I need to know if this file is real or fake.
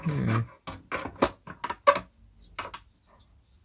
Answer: real